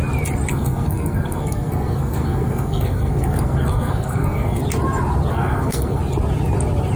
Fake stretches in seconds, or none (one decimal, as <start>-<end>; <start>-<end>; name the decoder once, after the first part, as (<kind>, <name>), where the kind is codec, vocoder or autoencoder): 0.5-4.6 (codec, SNAC); 5.3-6.0